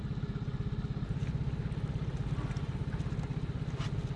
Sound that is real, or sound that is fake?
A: real